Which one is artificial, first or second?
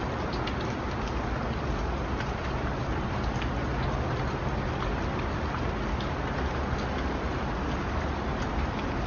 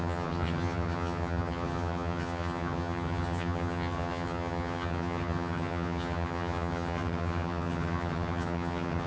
second